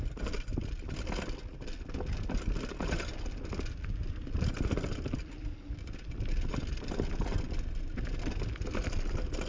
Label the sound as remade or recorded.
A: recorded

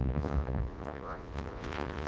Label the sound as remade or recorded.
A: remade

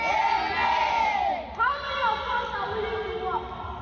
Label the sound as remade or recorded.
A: recorded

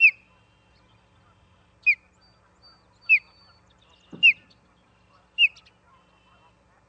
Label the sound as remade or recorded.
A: recorded